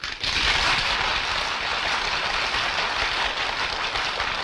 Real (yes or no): yes